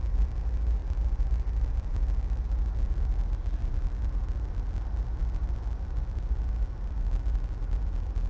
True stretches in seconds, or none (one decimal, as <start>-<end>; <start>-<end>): 0.0-8.3